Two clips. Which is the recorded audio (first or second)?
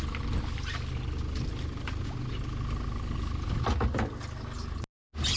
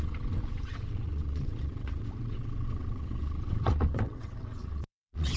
first